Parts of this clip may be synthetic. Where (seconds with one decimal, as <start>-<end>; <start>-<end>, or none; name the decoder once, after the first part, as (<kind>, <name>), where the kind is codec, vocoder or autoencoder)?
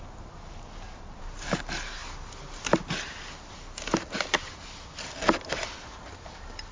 none